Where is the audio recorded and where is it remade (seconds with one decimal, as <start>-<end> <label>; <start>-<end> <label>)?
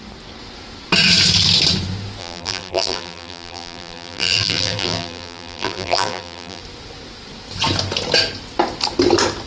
0.0-2.2 recorded; 2.2-6.6 remade; 6.6-9.5 recorded